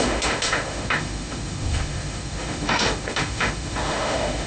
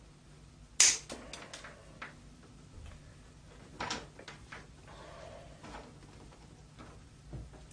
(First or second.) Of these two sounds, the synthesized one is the first